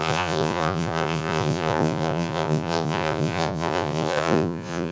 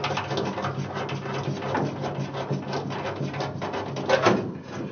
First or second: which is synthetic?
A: first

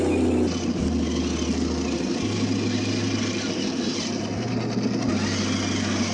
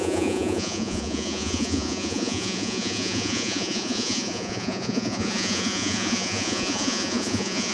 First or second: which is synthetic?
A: second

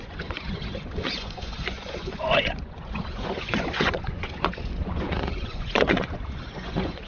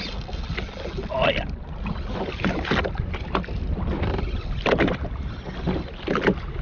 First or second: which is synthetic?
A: first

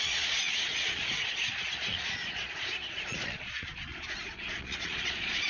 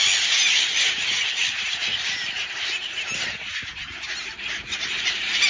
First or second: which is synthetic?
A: first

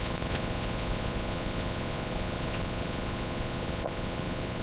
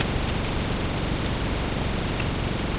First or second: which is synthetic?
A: first